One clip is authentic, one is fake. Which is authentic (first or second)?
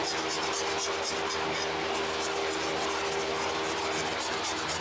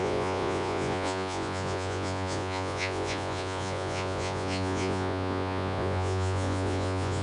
first